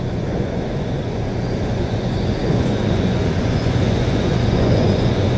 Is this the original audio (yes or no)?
no